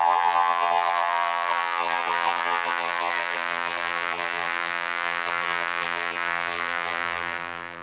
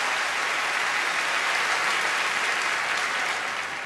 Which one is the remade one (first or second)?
first